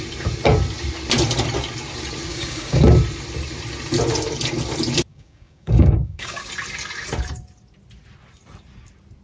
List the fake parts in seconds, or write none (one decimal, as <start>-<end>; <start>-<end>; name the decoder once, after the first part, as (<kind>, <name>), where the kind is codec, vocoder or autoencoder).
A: 2.3-2.8 (codec, DAC); 5.1-6.5